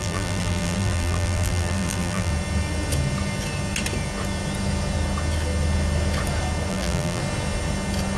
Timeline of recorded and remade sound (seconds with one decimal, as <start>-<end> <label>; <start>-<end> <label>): 0.0-2.3 remade; 2.3-6.7 recorded; 6.7-7.2 remade; 7.2-8.2 recorded